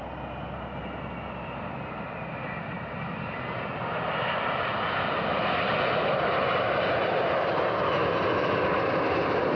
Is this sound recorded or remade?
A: recorded